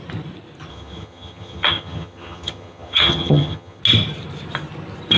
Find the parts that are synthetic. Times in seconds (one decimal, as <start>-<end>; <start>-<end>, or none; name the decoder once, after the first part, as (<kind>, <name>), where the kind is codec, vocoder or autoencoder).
0.7-3.8 (vocoder, HiFi-GAN)